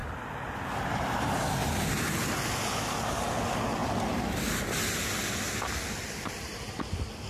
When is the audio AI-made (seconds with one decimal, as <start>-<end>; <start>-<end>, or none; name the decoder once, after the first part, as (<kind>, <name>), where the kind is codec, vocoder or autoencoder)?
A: none